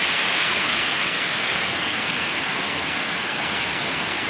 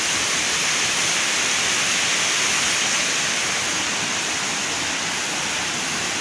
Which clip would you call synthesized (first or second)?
first